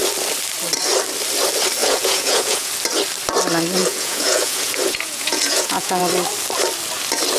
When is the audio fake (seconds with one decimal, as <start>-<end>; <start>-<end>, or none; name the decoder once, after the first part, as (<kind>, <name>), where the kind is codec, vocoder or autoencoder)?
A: 1.8-2.7 (vocoder, Vocos); 3.8-6.0